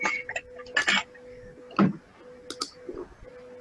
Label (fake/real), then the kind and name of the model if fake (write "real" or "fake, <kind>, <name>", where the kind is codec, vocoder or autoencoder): real